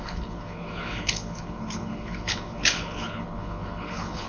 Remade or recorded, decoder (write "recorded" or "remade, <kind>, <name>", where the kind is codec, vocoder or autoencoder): remade, codec, HILCodec